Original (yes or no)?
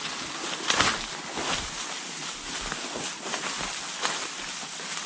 yes